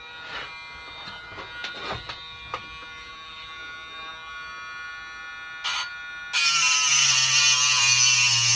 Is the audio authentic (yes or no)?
yes